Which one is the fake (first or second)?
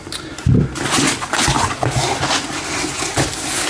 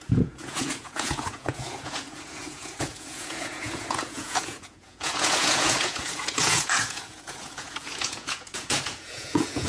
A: second